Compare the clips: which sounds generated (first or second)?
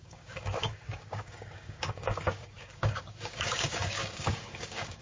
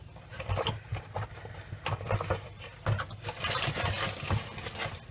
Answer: first